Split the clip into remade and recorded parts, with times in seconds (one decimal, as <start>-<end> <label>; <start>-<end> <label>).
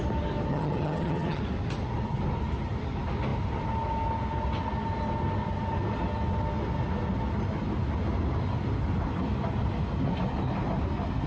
0.0-0.5 recorded; 0.5-1.4 remade; 1.4-11.3 recorded